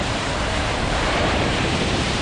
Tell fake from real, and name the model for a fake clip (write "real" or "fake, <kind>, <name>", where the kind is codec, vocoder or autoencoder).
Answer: fake, vocoder, BigVGAN v2